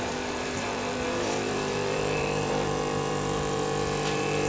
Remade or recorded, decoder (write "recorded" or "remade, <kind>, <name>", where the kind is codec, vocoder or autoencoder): remade, vocoder, BigVGAN v2